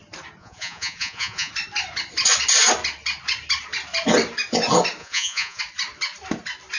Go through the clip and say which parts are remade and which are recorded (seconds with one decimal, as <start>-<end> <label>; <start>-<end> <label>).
0.0-0.4 recorded; 0.4-1.5 remade; 1.5-5.0 recorded; 5.0-5.6 remade; 5.6-6.8 recorded